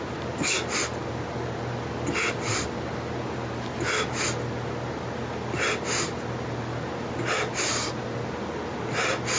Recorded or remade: recorded